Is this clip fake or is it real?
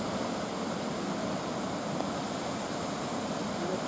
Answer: real